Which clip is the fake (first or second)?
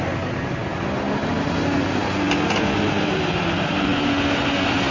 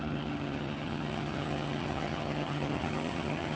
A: second